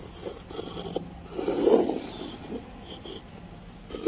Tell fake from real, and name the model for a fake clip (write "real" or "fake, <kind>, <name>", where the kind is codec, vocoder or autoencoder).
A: real